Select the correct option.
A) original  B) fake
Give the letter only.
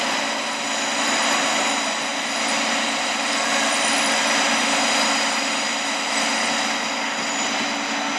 A